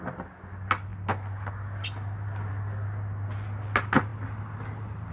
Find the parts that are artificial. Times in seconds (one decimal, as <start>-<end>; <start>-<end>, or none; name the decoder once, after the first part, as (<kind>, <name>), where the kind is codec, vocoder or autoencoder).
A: none